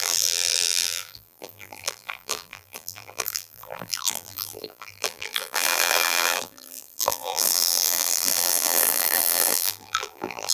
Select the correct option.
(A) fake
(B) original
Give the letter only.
A